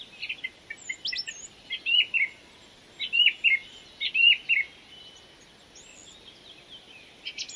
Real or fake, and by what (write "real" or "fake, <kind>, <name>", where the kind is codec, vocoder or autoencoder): real